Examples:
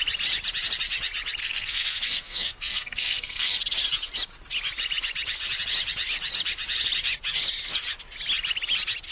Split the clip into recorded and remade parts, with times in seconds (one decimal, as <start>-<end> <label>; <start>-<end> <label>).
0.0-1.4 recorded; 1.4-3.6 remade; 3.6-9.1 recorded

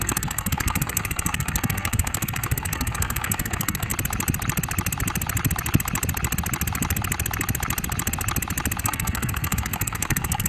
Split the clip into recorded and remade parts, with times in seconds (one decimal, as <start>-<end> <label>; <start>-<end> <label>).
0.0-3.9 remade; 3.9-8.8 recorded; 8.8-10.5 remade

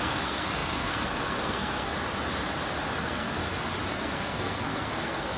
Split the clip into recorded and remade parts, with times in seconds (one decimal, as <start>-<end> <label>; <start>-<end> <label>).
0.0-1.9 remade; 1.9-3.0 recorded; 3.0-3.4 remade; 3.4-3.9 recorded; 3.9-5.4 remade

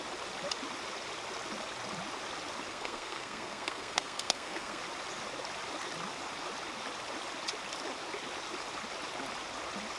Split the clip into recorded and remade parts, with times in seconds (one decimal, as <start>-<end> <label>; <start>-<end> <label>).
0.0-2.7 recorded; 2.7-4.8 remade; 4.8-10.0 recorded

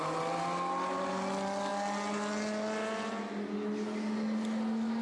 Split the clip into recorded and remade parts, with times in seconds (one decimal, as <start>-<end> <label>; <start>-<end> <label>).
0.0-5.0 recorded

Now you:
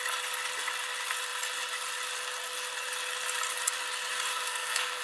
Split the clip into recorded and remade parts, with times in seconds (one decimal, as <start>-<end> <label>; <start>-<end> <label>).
0.0-4.3 recorded; 4.3-5.0 remade